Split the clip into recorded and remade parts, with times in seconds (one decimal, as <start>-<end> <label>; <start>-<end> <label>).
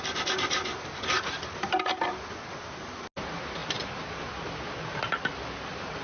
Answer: 0.0-6.0 recorded